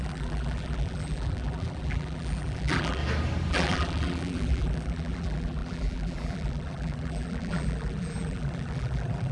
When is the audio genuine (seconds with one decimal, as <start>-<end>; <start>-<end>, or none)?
3.0-3.5